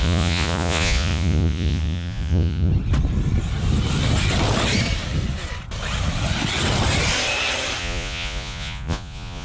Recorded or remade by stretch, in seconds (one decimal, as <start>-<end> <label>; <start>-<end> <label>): 0.0-2.7 remade; 2.7-7.8 recorded; 7.8-9.4 remade